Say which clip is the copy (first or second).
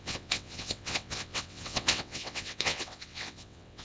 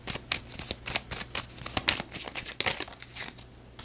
first